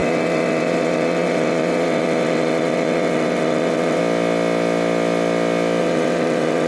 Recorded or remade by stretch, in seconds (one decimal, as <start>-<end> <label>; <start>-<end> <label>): 0.0-4.0 remade; 4.0-5.8 recorded; 5.8-6.7 remade